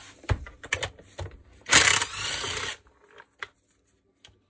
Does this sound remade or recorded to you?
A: recorded